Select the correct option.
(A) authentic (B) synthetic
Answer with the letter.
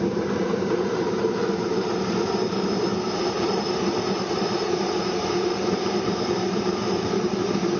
B